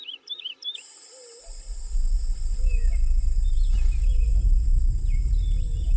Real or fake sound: real